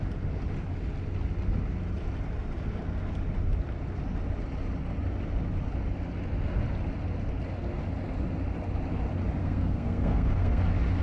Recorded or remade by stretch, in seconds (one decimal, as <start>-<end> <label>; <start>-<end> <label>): 0.0-9.4 recorded; 9.4-10.6 remade; 10.6-11.0 recorded